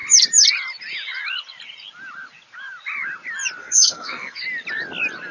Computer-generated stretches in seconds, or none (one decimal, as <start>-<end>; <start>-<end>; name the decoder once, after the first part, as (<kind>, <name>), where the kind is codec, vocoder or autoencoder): 3.6-4.4 (codec, SNAC)